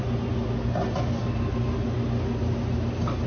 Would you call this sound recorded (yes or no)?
yes